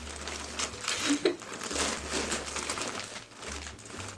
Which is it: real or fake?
real